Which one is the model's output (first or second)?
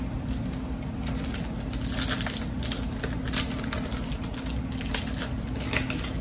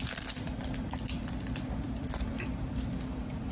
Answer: second